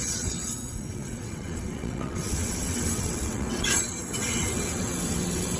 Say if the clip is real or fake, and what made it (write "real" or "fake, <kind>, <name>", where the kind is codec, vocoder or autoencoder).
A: fake, vocoder, WaveNeXt